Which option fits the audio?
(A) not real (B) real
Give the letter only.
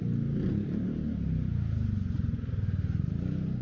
B